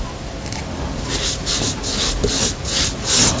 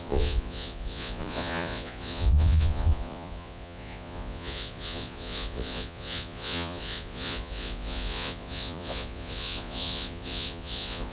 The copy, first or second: second